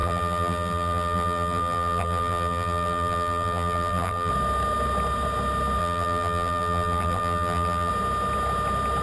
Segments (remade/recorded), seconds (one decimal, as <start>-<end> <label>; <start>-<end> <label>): 0.0-4.3 remade; 4.3-5.8 recorded; 5.8-7.9 remade; 7.9-9.0 recorded